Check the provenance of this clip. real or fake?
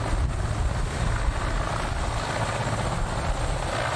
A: real